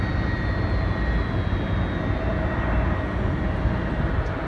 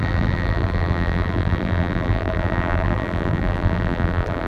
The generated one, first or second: second